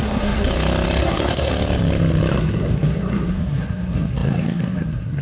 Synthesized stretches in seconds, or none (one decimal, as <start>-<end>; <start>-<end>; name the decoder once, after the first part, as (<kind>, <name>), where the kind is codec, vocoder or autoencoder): 0.0-0.5 (codec, SNAC); 1.0-1.5; 2.3-5.2